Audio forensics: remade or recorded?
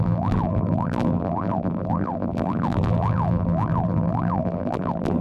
remade